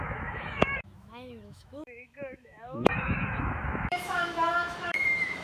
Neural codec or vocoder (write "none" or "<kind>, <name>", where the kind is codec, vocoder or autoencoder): autoencoder, DAC-VAE